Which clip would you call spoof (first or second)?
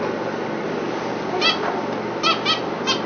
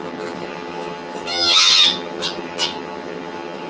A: second